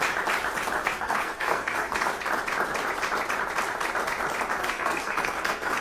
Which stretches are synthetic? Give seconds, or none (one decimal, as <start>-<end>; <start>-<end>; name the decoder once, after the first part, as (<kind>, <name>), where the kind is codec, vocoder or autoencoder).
0.8-2.1 (codec, SNAC); 4.6-5.8